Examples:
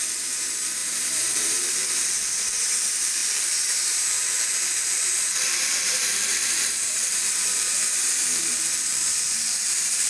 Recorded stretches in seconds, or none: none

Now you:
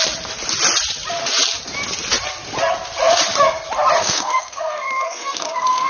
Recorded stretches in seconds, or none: 0.0-4.0